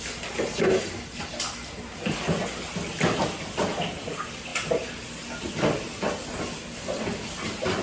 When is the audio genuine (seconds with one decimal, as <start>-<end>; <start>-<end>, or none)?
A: 0.0-7.8